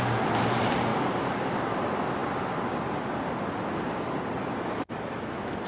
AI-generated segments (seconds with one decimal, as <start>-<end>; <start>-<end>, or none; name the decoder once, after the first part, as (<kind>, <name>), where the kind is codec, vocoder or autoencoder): 0.9-1.6 (codec, DAC)

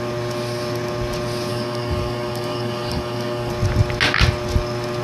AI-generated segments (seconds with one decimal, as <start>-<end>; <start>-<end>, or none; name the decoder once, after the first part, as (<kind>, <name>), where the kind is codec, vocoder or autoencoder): 1.5-3.5 (codec, DAC)

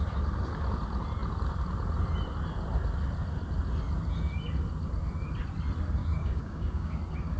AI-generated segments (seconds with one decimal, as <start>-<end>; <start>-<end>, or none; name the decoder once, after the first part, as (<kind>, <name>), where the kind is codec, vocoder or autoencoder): 6.0-6.9 (codec, DAC)